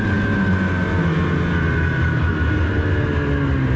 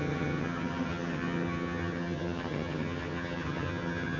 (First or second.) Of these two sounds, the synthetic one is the second